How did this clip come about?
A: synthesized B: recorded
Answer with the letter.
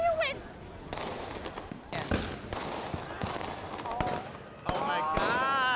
B